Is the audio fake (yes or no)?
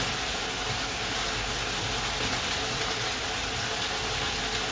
no